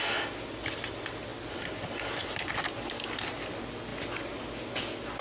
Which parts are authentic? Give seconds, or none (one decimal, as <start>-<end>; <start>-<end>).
0.0-5.2